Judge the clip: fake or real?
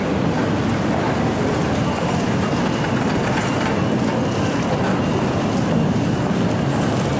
real